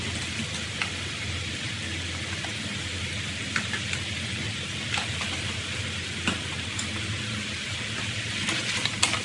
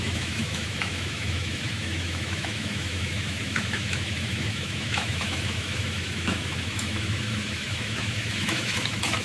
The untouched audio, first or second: first